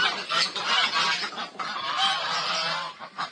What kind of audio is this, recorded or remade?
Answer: remade